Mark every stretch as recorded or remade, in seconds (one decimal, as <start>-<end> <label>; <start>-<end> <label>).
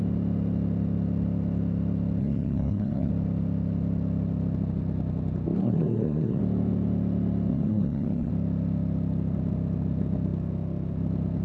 0.0-2.2 recorded; 2.2-3.1 remade; 3.1-5.6 recorded; 5.6-6.4 remade; 6.4-7.5 recorded; 7.5-8.3 remade; 8.3-11.4 recorded